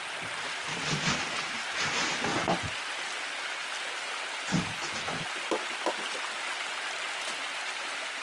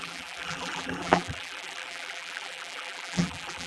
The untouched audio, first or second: first